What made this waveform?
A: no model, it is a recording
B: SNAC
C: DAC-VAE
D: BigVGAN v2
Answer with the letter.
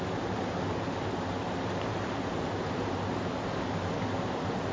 A